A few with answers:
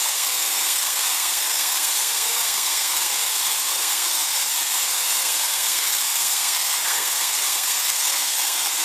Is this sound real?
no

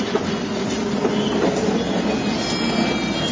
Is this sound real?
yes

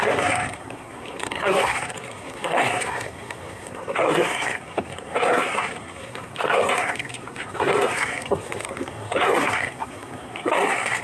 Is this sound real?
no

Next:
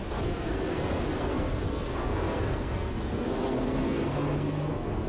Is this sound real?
no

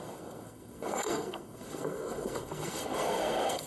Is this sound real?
no